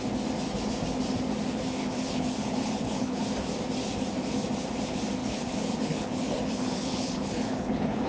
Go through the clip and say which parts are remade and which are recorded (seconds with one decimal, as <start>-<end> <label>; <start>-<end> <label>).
0.0-1.8 recorded; 1.8-3.2 remade; 3.2-5.2 recorded; 5.2-8.1 remade